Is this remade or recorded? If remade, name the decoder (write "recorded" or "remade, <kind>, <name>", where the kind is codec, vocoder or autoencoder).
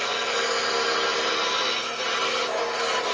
recorded